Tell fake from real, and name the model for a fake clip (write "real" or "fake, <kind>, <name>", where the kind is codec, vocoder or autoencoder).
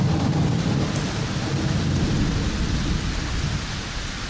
real